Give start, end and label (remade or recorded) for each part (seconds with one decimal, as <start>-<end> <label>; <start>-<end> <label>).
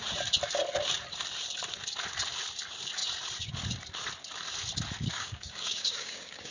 0.0-5.1 recorded; 5.1-6.5 remade